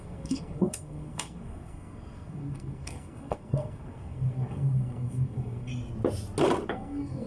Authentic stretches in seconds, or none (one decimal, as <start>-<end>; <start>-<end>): 5.7-6.7